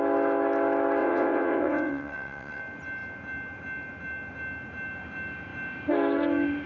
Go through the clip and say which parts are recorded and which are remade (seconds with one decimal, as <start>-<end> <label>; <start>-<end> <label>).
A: 0.0-1.0 recorded; 1.0-2.6 remade; 2.6-6.7 recorded